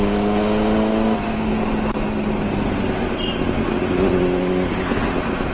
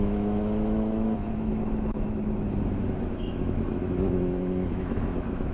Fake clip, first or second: second